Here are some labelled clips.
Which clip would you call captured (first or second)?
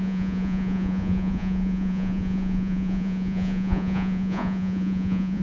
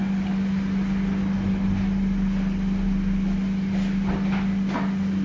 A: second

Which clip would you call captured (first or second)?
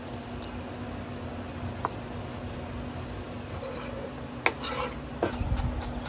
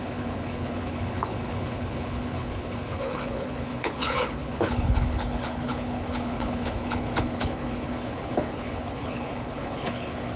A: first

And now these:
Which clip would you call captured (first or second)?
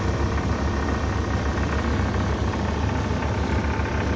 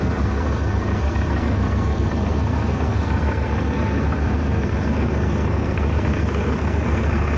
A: first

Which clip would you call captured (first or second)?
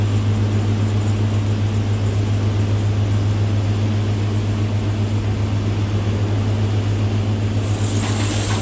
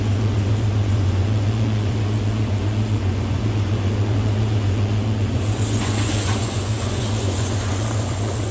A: first